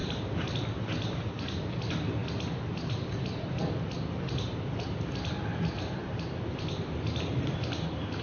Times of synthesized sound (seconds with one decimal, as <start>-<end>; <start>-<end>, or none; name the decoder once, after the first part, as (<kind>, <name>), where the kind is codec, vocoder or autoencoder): none